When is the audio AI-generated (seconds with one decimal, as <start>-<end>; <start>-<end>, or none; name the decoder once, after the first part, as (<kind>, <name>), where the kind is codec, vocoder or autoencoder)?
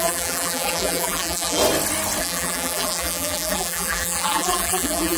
0.0-1.6 (vocoder, BigVGAN v2); 2.2-5.2